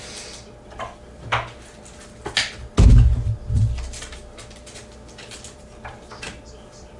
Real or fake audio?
real